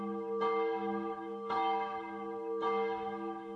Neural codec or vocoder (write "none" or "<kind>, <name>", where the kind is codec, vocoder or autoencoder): autoencoder, DAC-VAE